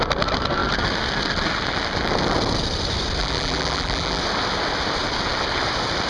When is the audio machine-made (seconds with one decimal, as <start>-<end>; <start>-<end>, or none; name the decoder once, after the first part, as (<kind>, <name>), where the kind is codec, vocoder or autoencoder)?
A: 3.2-4.2 (vocoder, BigVGAN v2)